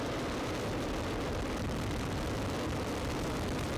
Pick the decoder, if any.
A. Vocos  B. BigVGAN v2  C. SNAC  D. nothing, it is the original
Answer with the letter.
B